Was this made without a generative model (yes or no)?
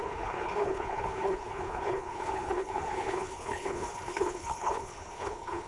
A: no